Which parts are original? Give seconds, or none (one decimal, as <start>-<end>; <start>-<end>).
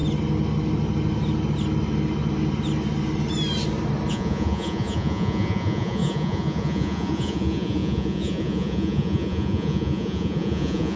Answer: 0.0-4.1